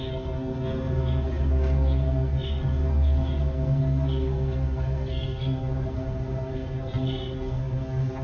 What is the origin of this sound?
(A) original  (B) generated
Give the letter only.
B